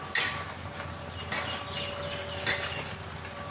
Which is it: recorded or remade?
recorded